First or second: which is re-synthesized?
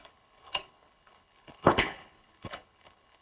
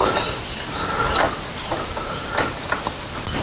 first